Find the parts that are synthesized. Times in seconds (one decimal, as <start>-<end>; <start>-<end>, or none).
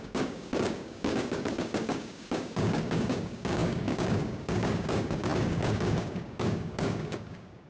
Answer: 0.0-7.7